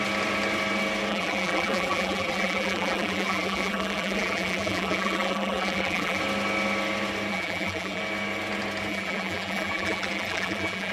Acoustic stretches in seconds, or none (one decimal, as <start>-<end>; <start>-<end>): 0.0-1.1; 6.2-7.3; 8.0-8.9

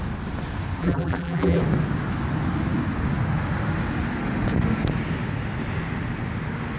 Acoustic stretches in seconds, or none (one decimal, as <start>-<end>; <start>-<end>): 0.0-0.8; 1.6-6.8

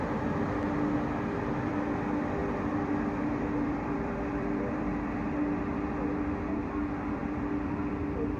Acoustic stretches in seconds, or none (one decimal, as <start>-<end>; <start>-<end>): 0.0-2.4; 4.9-8.4

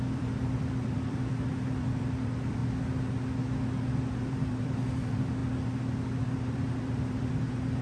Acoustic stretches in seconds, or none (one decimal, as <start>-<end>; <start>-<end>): 2.6-3.9; 5.4-6.2

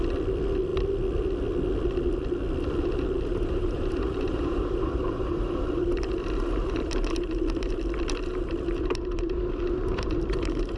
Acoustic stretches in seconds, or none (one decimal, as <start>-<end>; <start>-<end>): 0.0-3.3; 7.8-8.3

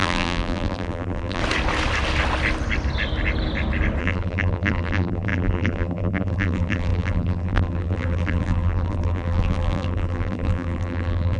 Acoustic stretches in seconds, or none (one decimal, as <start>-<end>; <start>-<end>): 1.4-4.0

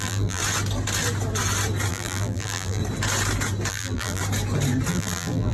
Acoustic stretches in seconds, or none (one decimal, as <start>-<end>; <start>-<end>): 0.4-1.9; 2.8-3.7; 4.2-4.9

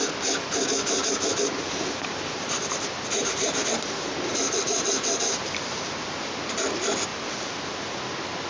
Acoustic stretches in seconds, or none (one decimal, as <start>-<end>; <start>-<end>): 0.0-1.0; 6.1-7.1; 8.0-8.5